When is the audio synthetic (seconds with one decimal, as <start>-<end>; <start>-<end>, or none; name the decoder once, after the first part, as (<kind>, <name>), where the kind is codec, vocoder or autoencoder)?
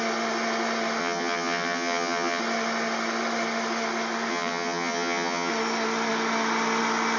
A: 1.0-2.4 (vocoder, HiFi-GAN); 4.3-5.5